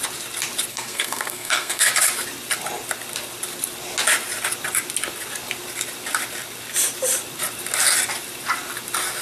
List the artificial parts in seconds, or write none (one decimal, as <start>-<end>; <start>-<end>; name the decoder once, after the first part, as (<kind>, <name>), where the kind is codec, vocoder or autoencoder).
0.7-1.9 (codec, SNAC)